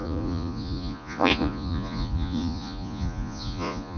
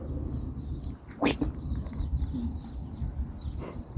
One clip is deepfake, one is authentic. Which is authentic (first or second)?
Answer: second